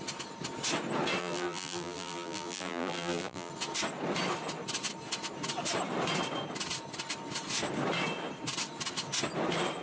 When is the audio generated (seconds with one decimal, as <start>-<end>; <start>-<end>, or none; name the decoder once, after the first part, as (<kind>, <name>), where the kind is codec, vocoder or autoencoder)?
1.2-3.5 (vocoder, BigVGAN v2)

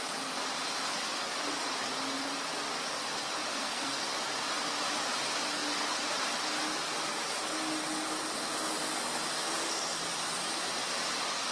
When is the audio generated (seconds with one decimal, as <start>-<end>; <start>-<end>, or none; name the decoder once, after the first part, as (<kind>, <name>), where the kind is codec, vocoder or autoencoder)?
3.5-4.1 (codec, SNAC)

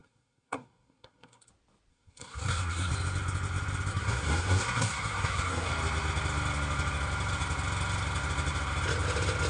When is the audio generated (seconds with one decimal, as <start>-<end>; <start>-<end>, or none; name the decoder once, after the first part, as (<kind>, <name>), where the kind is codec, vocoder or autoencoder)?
0.0-1.5 (codec, SNAC); 1.9-2.9; 3.9-5.7

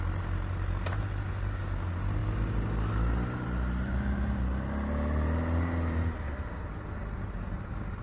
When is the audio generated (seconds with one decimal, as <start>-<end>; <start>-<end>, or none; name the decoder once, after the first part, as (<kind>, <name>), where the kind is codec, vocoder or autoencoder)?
none

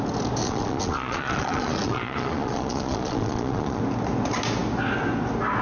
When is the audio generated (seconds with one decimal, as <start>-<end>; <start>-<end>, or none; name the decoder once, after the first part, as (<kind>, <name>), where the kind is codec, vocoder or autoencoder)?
0.4-3.8 (vocoder, Vocos)